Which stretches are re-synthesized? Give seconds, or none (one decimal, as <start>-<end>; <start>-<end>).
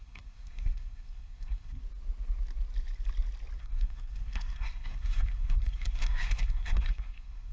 0.0-1.8; 3.6-7.5